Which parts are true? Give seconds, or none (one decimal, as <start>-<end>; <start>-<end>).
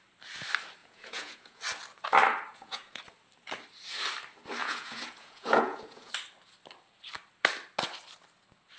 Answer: 0.0-0.8; 1.6-2.5; 3.0-4.6; 6.1-8.8